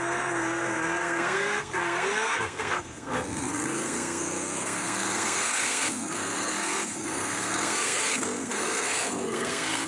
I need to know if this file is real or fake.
fake